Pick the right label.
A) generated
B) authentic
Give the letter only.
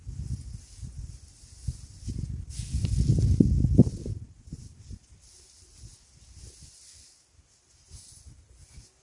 B